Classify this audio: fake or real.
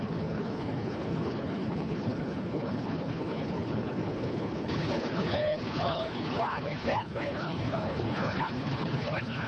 fake